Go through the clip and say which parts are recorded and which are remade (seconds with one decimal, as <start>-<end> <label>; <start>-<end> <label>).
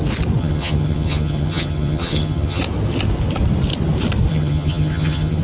0.0-0.4 recorded; 0.4-2.6 remade; 2.6-4.3 recorded; 4.3-5.4 remade